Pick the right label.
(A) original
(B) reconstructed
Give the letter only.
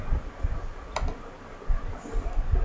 A